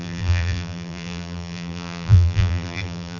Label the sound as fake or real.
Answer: fake